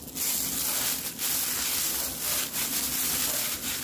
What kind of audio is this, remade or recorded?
recorded